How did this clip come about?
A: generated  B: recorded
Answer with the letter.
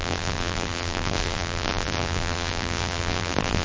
A